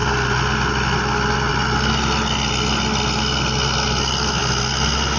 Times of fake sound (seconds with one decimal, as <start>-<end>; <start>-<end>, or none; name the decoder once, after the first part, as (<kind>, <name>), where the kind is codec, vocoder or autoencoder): none